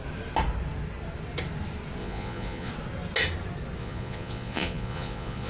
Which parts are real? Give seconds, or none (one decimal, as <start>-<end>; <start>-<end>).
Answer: 0.0-2.0; 2.7-3.8